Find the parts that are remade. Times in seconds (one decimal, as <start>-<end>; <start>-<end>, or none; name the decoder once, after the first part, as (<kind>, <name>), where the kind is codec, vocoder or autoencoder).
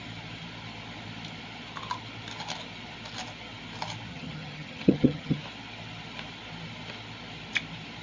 4.1-5.4 (vocoder, HiFi-GAN)